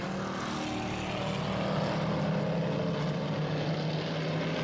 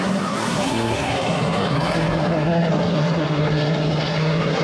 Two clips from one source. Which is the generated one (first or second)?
second